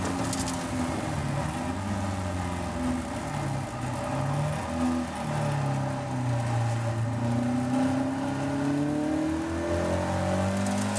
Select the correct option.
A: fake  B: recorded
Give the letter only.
B